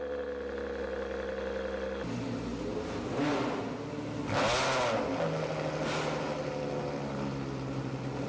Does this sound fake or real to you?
real